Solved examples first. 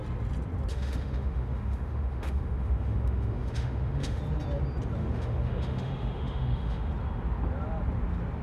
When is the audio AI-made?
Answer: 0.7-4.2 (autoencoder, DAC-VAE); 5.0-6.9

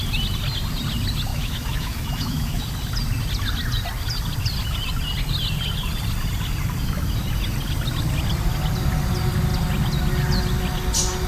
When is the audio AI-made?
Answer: 1.3-2.6 (autoencoder, DAC-VAE)

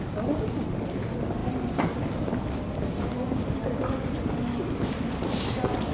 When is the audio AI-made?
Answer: none

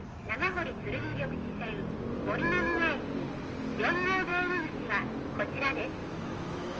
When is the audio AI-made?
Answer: 1.0-1.5 (autoencoder, DAC-VAE); 4.3-4.9; 6.0-6.8